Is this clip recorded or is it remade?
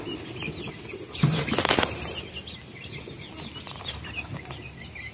recorded